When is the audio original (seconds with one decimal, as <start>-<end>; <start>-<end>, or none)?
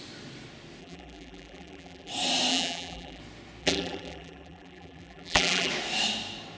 0.0-0.8; 2.1-2.5; 3.2-3.6; 5.7-6.6